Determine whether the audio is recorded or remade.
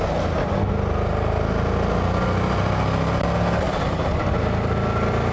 recorded